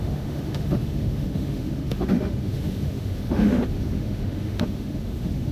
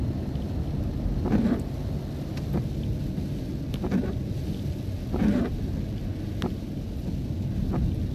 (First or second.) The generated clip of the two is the first